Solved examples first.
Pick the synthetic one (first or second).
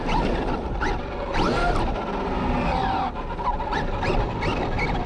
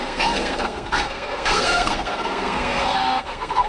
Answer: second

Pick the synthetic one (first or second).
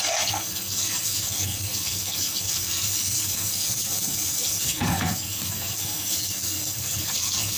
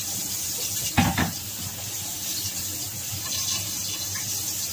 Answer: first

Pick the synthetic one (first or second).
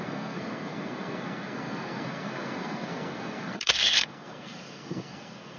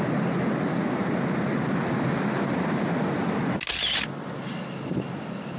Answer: first